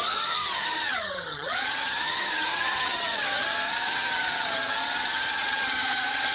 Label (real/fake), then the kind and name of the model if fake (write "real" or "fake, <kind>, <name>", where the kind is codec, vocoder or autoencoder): fake, vocoder, HiFi-GAN